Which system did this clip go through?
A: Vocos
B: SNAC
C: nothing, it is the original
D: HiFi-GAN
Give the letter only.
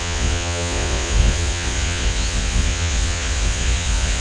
A